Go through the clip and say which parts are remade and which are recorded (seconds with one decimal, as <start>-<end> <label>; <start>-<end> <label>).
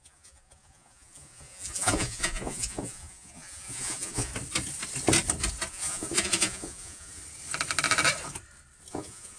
0.0-4.3 remade; 4.3-5.7 recorded; 5.7-7.2 remade; 7.2-8.9 recorded; 8.9-9.4 remade